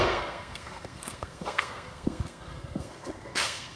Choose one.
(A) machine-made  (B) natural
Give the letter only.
A